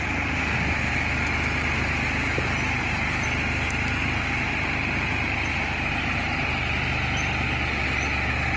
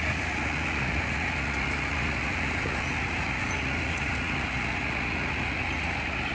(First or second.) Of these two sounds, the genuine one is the first